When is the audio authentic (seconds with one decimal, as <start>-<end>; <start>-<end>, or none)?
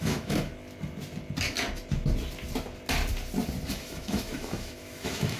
0.5-3.7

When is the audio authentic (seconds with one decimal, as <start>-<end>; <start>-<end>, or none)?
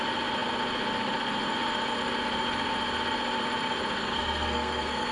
0.0-4.0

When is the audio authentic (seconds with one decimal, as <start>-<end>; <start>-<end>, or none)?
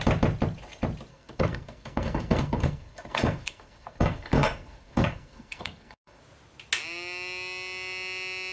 0.0-1.1; 6.2-8.5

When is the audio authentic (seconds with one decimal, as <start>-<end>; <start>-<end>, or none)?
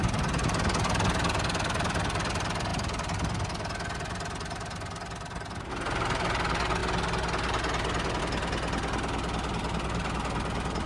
0.0-10.9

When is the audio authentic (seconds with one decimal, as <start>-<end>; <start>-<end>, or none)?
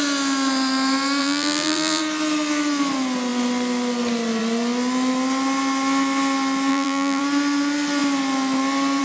0.0-1.2; 2.0-6.7; 7.2-9.0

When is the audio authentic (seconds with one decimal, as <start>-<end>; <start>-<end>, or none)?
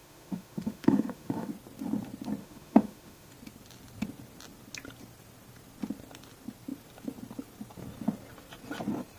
1.5-2.4; 3.3-9.2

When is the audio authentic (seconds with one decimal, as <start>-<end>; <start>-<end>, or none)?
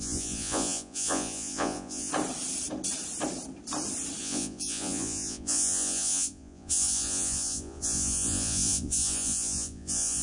2.1-4.2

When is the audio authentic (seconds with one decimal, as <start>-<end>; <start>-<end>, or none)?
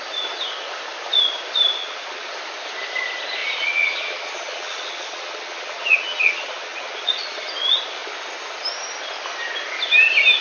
0.0-1.8; 2.3-3.4; 7.5-10.4